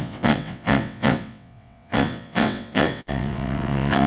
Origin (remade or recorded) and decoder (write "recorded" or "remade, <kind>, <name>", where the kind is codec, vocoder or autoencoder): remade, vocoder, WaveNeXt